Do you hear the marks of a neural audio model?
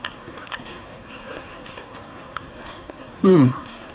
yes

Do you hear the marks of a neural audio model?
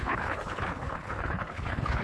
yes